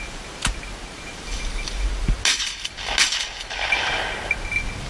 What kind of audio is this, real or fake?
real